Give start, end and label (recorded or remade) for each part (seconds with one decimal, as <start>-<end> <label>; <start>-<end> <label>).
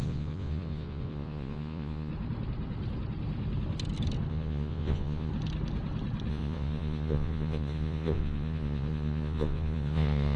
0.0-2.1 remade; 2.1-4.3 recorded; 4.3-5.3 remade; 5.3-6.3 recorded; 6.3-10.4 remade